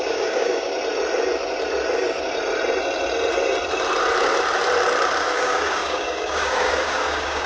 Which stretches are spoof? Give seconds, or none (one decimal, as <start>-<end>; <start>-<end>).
0.0-0.7; 5.2-7.5